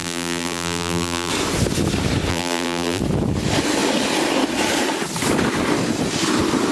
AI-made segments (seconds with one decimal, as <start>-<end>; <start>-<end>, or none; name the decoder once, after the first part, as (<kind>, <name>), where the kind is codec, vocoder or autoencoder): 0.0-1.3 (vocoder, BigVGAN v2); 2.3-3.0